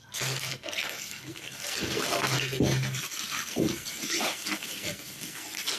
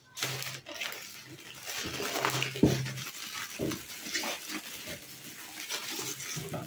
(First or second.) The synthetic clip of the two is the first